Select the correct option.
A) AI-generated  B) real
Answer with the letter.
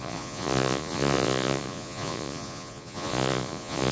A